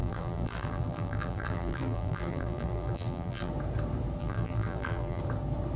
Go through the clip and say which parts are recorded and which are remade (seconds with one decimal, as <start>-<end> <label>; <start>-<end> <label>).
0.0-3.5 remade; 3.5-4.2 recorded; 4.2-5.2 remade; 5.2-5.8 recorded